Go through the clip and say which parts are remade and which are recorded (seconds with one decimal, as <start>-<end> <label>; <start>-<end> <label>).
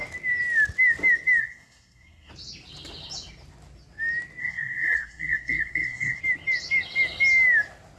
0.0-1.4 recorded; 1.4-2.3 remade; 2.3-4.4 recorded; 4.4-6.2 remade; 6.2-8.0 recorded